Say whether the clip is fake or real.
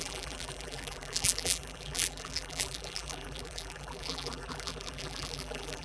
fake